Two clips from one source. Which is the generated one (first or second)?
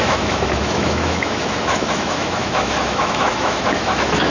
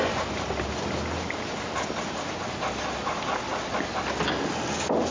first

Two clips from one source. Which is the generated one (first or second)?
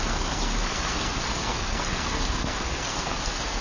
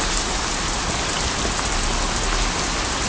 first